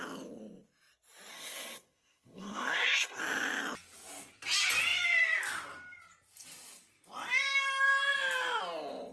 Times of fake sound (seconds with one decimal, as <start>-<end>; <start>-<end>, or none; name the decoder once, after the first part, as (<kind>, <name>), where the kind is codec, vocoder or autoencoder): 1.3-3.2 (codec, SNAC)